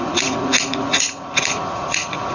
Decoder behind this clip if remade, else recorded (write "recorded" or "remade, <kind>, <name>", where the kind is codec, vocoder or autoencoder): remade, vocoder, Vocos